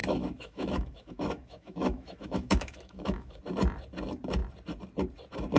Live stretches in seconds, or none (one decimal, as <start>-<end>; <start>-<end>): 3.4-5.6